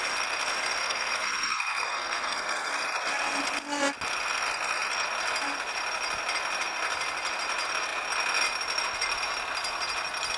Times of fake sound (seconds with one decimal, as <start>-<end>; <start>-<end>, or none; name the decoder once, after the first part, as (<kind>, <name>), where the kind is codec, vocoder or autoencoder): 0.8-2.7 (codec, SNAC)